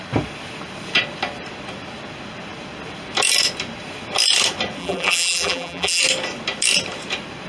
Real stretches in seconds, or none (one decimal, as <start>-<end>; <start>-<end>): 0.0-4.8; 6.0-7.5